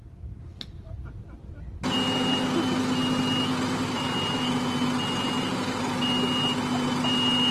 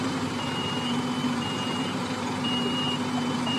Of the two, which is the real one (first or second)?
first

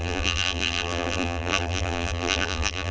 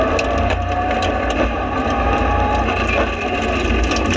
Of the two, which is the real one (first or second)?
second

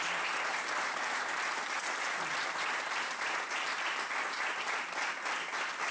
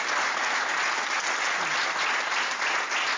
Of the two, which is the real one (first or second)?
second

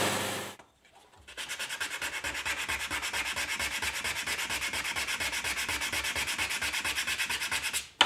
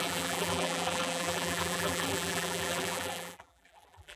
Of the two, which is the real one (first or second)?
first